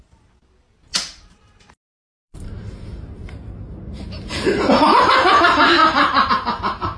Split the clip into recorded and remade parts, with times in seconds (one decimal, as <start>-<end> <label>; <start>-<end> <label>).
0.0-0.9 recorded; 0.9-5.0 remade; 5.0-5.8 recorded; 5.8-6.3 remade; 6.3-7.0 recorded